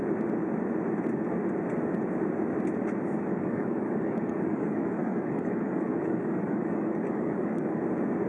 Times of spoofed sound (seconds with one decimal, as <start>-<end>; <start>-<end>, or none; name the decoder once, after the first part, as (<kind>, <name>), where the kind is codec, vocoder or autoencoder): 3.3-7.8 (codec, DAC)